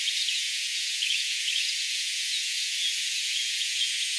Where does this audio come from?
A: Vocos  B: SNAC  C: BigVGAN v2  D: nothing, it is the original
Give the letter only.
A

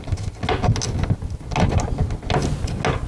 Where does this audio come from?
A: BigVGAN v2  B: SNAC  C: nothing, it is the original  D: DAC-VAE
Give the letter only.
C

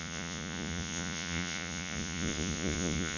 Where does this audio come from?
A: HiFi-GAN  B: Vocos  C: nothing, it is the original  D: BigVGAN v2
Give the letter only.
B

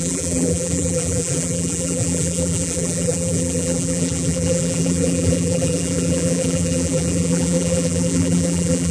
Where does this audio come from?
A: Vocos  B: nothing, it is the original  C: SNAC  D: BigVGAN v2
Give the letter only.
D